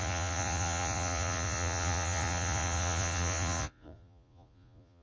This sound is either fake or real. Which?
fake